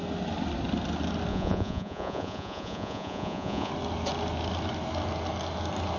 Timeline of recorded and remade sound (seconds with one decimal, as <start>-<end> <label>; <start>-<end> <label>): 0.0-1.3 recorded; 1.3-3.7 remade; 3.7-6.0 recorded